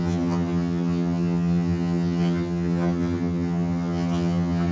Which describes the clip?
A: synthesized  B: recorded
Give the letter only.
A